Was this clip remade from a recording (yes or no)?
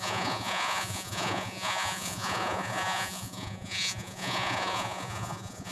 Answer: yes